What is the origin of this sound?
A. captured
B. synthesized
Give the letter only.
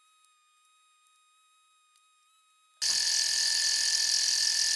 A